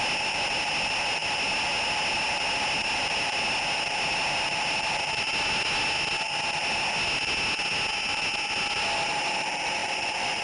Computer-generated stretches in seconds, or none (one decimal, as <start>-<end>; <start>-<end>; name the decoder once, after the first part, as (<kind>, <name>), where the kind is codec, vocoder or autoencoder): 9.8-10.4 (vocoder, Vocos)